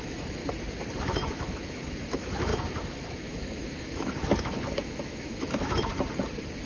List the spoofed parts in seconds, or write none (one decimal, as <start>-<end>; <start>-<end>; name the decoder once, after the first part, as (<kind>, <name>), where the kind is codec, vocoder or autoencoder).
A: 0.0-0.4 (autoencoder, DAC-VAE); 1.0-5.9